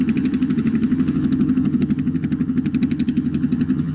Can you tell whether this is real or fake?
fake